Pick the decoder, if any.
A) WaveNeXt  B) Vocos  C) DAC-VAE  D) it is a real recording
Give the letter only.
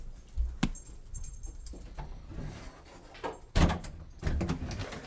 D